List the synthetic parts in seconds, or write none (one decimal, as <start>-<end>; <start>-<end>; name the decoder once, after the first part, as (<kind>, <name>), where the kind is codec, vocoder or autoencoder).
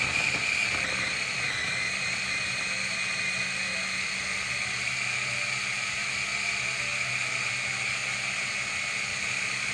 9.1-9.7 (vocoder, BigVGAN v2)